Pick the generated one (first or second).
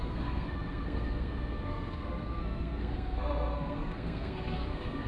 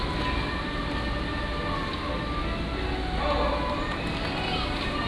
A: first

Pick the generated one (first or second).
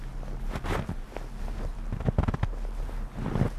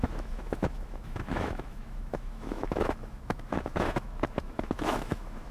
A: second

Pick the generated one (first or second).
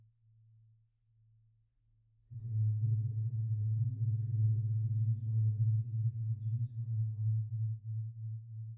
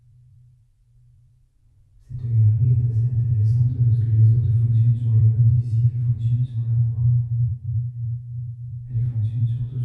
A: second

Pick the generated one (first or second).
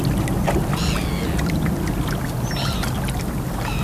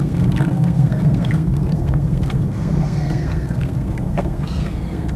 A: second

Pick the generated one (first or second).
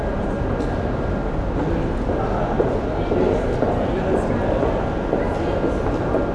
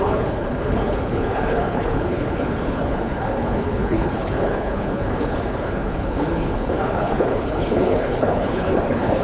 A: second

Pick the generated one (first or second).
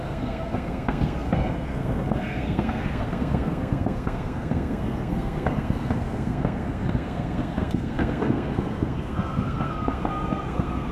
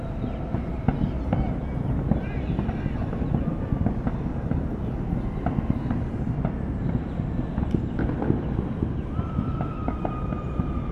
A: first